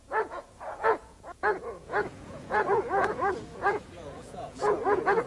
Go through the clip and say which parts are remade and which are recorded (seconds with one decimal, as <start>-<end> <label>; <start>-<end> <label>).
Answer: 0.0-5.3 remade